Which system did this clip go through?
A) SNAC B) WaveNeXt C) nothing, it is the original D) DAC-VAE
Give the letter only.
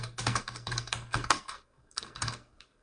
A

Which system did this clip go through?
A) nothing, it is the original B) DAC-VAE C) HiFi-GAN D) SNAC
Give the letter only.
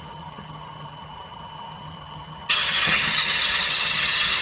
C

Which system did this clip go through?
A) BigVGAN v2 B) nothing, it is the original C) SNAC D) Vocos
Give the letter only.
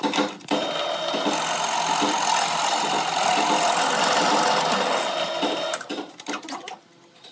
B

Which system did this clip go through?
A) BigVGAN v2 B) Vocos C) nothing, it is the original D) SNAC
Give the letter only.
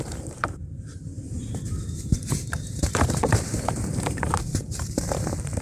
A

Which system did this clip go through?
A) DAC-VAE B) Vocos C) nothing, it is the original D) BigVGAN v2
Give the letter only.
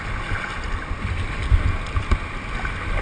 C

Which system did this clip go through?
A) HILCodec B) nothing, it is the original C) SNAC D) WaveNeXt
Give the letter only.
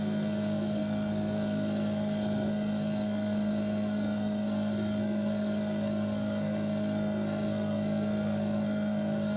C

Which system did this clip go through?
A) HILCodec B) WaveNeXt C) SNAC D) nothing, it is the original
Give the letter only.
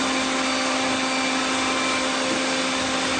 D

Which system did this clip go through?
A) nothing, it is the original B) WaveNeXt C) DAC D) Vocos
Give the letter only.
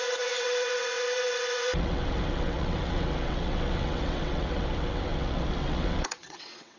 B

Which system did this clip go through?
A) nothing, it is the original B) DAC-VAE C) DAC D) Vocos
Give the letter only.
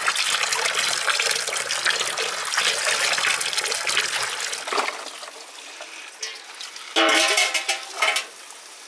A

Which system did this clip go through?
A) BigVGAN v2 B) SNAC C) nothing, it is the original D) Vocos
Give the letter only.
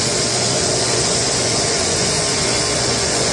D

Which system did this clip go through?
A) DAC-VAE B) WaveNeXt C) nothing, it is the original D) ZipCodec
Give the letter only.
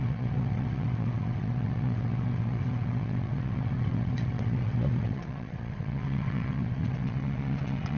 B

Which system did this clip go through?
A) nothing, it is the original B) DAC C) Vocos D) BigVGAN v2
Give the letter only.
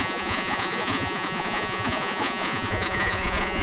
C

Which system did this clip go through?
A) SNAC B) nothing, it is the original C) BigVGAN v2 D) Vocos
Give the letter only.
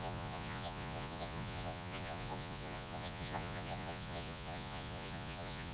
D